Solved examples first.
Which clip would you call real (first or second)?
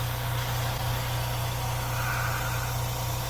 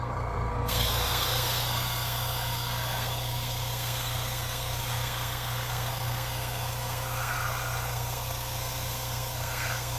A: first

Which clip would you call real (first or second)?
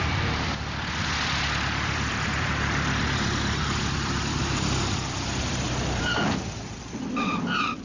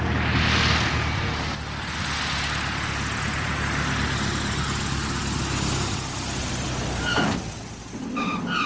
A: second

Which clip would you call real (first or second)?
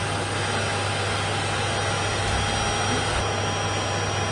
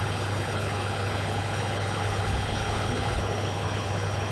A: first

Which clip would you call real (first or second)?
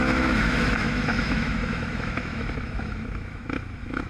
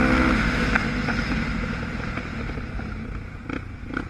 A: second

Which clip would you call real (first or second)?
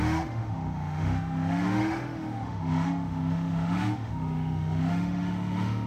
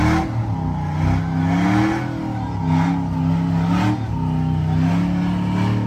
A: second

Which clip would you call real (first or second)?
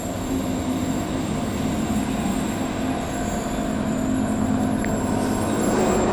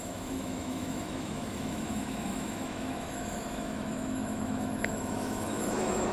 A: first